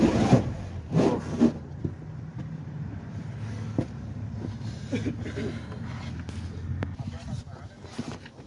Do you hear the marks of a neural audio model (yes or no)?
no